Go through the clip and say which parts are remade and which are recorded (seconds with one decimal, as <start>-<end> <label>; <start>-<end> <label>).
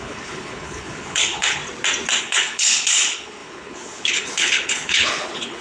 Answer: 0.0-1.6 remade; 1.6-2.2 recorded; 2.2-5.6 remade